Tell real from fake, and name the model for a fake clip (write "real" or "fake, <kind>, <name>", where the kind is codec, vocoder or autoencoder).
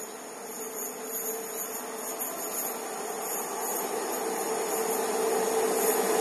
real